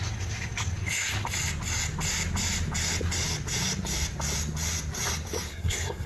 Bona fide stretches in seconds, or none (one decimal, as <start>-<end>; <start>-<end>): 0.0-5.5